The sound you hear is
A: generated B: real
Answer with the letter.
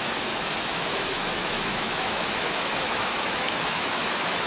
A